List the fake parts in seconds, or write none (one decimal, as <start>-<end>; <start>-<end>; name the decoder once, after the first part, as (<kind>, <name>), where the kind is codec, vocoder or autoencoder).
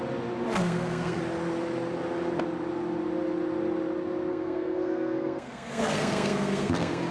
0.6-1.2 (codec, SNAC); 4.3-7.1